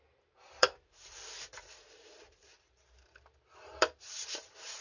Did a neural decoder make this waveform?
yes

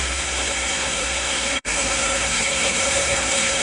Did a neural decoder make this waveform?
yes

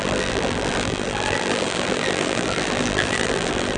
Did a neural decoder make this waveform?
yes